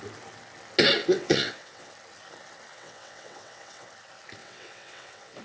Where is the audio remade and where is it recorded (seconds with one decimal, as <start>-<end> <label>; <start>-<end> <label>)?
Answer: 0.0-1.0 recorded; 1.0-1.9 remade; 1.9-2.7 recorded; 2.7-3.9 remade; 3.9-4.4 recorded; 4.4-5.4 remade